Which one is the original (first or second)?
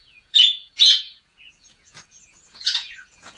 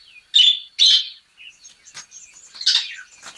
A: second